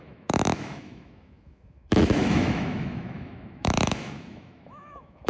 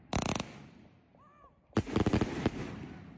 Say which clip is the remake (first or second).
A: first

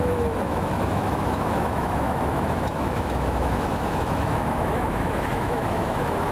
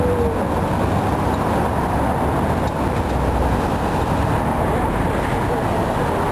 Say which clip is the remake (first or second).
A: first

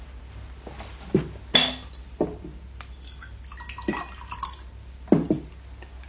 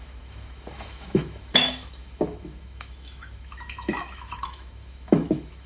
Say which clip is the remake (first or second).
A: second